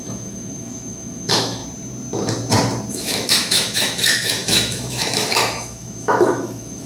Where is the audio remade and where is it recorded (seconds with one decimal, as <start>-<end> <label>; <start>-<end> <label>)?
0.0-1.6 remade; 1.6-2.9 recorded; 2.9-6.9 remade